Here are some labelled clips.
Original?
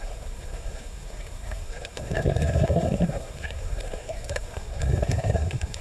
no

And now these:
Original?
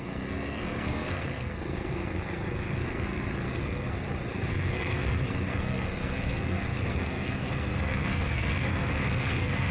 no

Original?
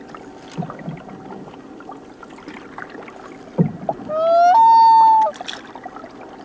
yes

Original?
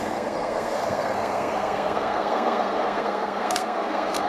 no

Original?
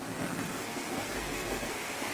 no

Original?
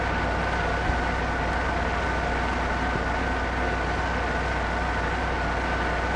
yes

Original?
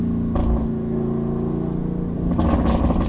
yes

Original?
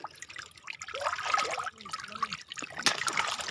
yes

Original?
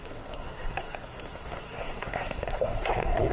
no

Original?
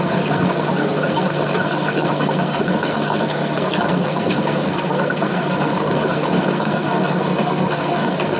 no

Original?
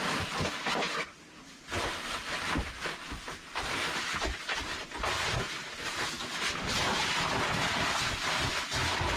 yes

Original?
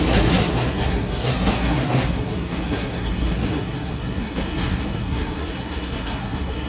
no